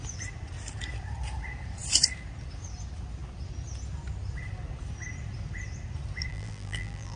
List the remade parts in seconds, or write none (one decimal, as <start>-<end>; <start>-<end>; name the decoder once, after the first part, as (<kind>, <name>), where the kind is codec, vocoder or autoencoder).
6.3-7.2 (vocoder, BigVGAN v2)

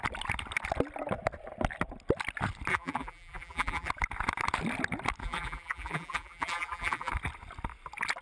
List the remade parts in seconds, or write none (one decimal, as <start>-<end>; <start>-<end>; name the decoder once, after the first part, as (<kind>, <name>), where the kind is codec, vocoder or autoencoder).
2.7-3.9 (vocoder, BigVGAN v2); 5.2-7.1

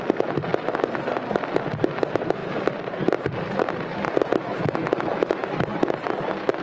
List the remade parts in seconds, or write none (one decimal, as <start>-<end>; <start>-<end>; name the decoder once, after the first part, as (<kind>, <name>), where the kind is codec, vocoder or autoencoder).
2.4-4.6 (vocoder, BigVGAN v2); 5.4-6.0

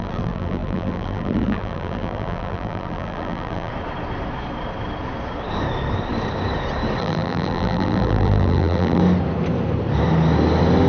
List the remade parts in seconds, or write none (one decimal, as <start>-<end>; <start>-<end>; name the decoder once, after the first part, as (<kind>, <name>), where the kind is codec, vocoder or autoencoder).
0.0-3.7 (vocoder, BigVGAN v2); 7.0-9.0

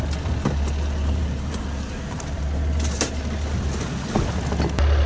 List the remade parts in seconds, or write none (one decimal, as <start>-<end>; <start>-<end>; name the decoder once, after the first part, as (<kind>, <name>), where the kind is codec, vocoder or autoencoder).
1.0-2.4 (vocoder, BigVGAN v2)